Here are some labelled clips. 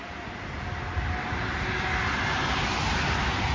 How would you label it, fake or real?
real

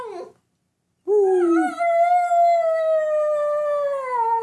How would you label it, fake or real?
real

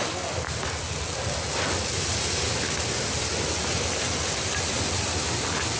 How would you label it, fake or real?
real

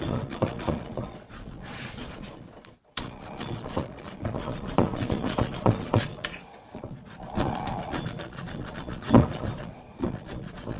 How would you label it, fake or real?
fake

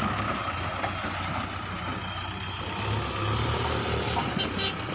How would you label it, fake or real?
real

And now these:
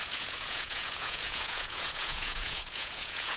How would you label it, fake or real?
fake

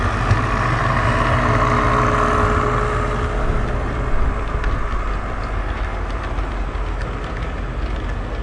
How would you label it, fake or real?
real